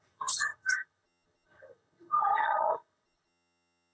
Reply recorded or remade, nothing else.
remade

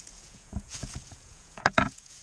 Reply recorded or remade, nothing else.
remade